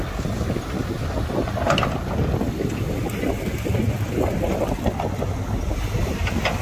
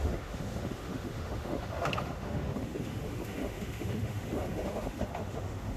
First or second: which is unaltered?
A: first